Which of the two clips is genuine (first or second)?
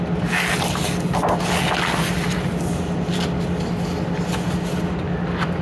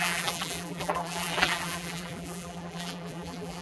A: first